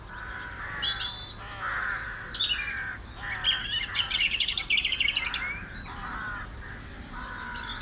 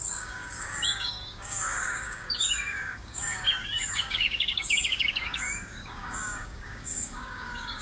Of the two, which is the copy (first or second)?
second